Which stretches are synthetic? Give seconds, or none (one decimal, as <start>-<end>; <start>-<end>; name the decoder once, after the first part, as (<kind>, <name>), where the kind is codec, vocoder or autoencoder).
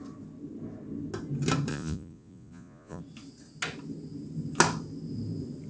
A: 1.7-3.0 (vocoder, Vocos)